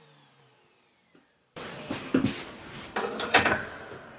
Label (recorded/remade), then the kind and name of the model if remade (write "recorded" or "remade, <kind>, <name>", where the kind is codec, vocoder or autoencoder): remade, vocoder, BigVGAN v2